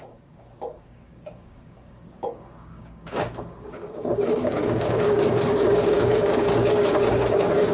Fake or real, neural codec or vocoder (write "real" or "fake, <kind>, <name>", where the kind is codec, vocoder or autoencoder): fake, codec, DAC